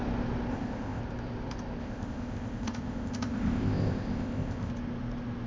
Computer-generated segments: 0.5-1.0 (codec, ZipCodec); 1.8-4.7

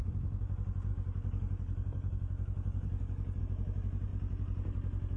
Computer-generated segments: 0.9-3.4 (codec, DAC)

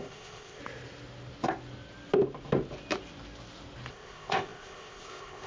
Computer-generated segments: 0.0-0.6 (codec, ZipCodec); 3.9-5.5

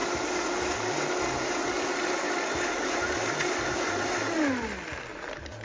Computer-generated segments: none

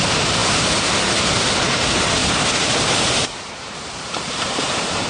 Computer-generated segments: 0.0-5.1 (vocoder, BigVGAN v2)

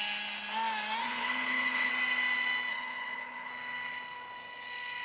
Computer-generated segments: 1.0-1.9 (codec, HILCodec); 2.7-3.5

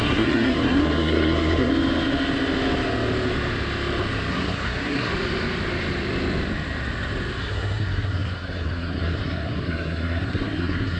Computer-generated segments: 0.0-1.7 (codec, SNAC); 4.3-5.1; 7.4-11.0

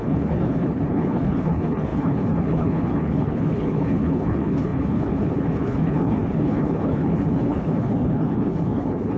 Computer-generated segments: 0.0-9.2 (codec, HILCodec)